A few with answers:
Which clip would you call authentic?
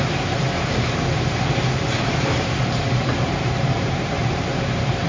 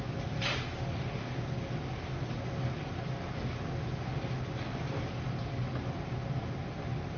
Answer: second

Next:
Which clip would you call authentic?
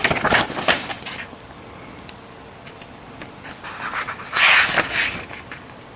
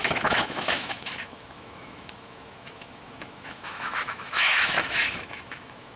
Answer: first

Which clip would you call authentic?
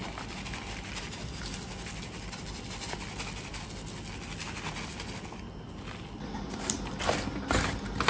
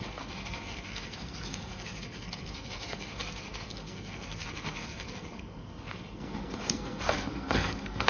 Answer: first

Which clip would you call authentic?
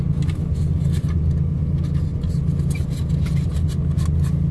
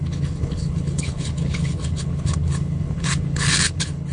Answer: first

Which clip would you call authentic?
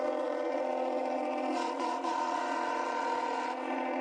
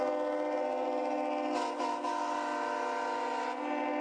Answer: second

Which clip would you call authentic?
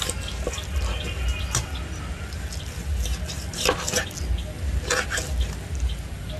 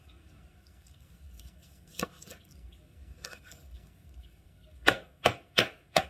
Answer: first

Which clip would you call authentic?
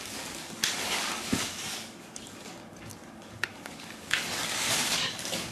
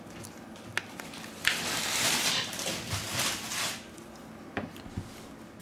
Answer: second